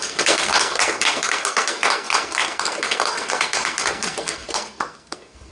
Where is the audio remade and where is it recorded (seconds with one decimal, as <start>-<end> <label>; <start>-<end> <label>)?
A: 0.0-5.5 remade